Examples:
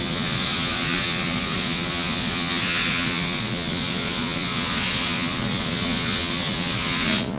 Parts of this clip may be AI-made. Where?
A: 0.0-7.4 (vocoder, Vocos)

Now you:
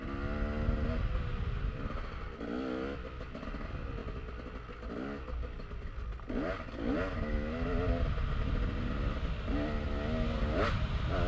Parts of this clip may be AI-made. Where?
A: none

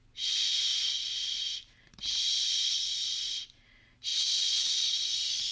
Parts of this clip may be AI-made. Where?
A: 0.0-0.7 (vocoder, BigVGAN v2); 1.3-5.5

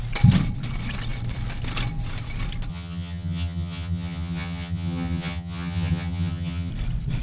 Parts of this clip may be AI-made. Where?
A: 2.7-6.7 (vocoder, HiFi-GAN)

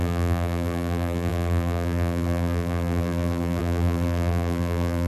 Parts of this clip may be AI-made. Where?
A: 0.0-5.1 (vocoder, BigVGAN v2)

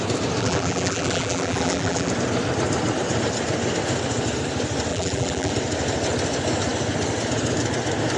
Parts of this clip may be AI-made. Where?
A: 0.4-2.1 (vocoder, BigVGAN v2); 4.9-5.5